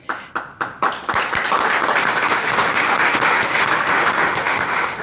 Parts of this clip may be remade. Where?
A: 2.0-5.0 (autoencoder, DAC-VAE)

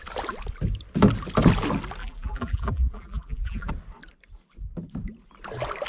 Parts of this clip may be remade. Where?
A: 2.0-3.7 (vocoder, BigVGAN v2)

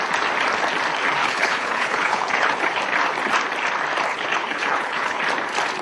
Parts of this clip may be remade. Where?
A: 1.2-2.8 (codec, HILCodec); 4.1-5.2

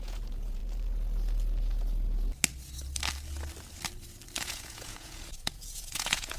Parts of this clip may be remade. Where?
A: 0.0-0.6 (vocoder, Vocos); 4.4-6.4

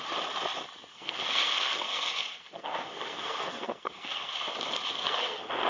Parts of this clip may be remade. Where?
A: 0.9-4.3 (codec, SNAC); 4.9-5.7